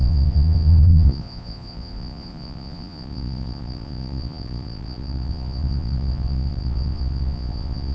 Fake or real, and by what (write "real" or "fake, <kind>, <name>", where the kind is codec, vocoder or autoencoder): fake, vocoder, Vocos